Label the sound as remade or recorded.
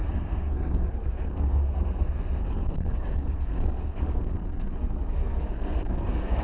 remade